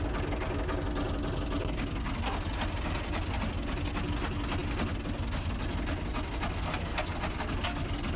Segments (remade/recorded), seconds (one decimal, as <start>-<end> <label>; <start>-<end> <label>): 0.0-8.2 recorded